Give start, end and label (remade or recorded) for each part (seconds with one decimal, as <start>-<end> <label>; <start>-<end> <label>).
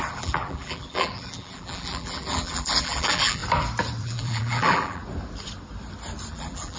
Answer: 0.0-3.4 remade; 3.4-4.0 recorded; 4.0-5.0 remade; 5.0-6.3 recorded; 6.3-6.8 remade